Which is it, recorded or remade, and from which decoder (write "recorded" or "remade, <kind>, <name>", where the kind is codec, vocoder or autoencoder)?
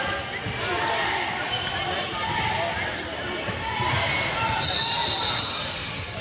recorded